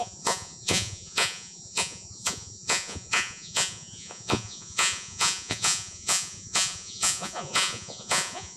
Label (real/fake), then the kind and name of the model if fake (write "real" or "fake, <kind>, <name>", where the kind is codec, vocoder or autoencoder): fake, vocoder, Vocos